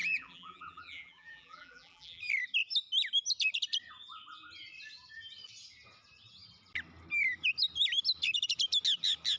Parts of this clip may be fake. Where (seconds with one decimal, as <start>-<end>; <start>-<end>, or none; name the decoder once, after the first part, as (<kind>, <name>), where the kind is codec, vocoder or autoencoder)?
0.0-2.2 (vocoder, BigVGAN v2)